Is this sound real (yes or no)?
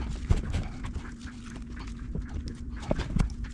yes